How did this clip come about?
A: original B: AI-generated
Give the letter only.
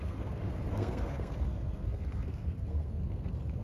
B